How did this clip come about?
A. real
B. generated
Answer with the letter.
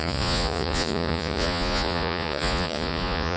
B